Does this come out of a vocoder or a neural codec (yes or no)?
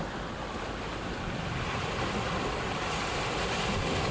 no